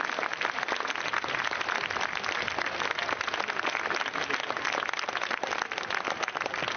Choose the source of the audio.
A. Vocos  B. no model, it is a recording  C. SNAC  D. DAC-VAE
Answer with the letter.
B